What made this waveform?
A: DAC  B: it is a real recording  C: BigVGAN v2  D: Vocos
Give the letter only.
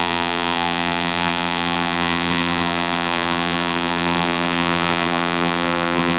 C